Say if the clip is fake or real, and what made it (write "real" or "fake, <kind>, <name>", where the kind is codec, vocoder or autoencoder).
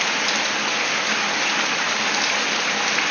real